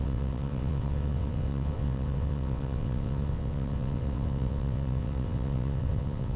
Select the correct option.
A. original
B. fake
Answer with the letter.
B